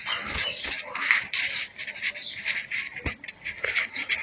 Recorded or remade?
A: recorded